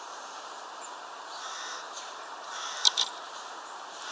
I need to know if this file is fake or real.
fake